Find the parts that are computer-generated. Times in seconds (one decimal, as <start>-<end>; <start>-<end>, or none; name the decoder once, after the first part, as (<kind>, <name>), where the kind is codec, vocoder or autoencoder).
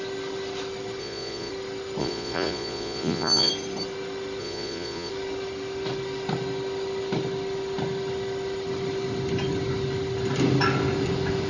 1.0-1.5 (vocoder, Vocos); 2.0-3.5; 4.4-5.1